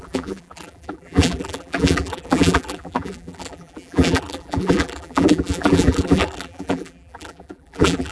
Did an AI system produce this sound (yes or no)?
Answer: yes